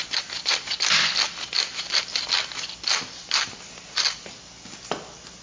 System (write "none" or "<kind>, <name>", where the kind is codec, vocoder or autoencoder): none